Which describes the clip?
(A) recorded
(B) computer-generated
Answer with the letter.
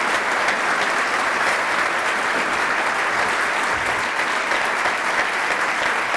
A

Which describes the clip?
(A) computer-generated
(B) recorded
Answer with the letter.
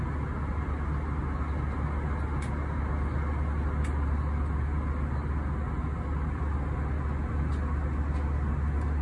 B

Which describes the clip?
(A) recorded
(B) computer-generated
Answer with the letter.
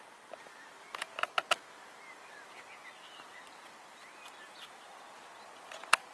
A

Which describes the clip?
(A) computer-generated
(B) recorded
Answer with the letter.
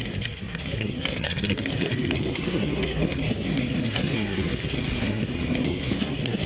A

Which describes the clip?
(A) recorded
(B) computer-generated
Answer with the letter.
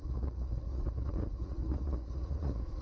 B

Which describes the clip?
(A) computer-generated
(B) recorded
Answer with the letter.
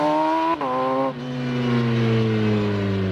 B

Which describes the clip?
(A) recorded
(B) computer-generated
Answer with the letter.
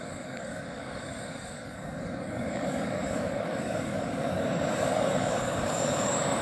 B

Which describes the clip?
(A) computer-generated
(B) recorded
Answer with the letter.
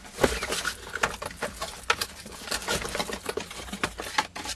B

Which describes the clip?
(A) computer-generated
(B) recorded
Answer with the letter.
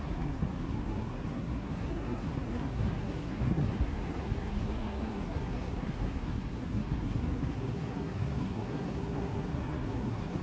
A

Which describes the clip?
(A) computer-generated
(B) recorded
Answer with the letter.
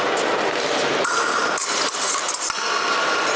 B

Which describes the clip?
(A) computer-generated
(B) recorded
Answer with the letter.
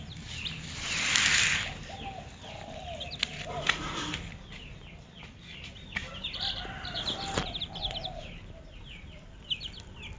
A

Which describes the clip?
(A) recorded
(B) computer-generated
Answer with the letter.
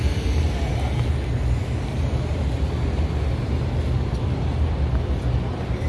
A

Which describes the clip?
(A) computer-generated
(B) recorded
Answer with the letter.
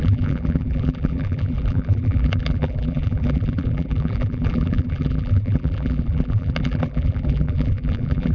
A